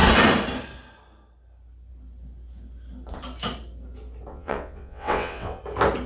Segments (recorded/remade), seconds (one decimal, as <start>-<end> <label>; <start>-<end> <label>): 0.0-4.3 recorded; 4.3-5.6 remade; 5.6-6.1 recorded